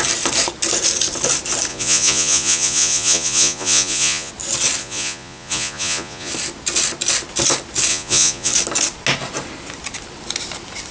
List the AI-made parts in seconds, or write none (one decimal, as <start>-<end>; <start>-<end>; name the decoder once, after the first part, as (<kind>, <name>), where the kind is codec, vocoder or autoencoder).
1.7-4.3 (vocoder, Vocos); 4.8-6.3; 7.9-8.5